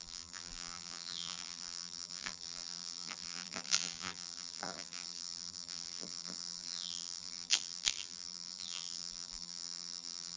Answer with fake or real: fake